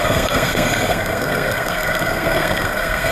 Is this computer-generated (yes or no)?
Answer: yes